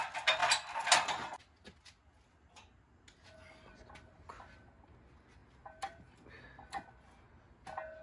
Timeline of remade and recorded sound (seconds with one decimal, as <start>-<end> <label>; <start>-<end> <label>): 0.0-8.0 recorded